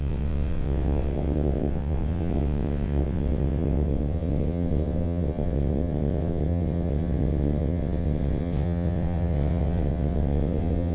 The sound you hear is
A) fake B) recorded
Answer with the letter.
A